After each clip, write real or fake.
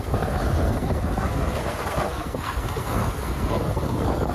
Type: fake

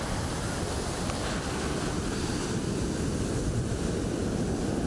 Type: real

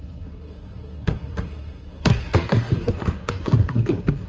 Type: fake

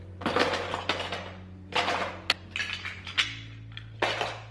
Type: real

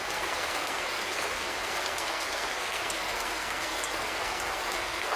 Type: fake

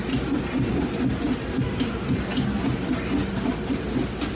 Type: real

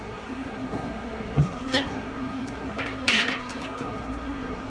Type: fake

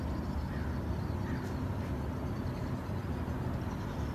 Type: real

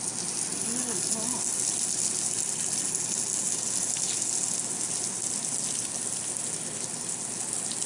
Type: real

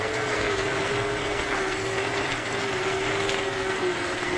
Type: fake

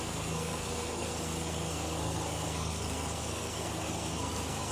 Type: fake